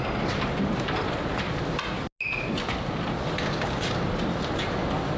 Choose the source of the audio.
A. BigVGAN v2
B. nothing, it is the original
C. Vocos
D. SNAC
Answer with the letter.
B